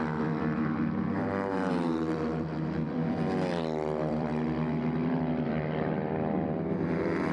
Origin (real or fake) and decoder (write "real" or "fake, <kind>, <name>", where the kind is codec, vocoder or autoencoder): fake, vocoder, BigVGAN v2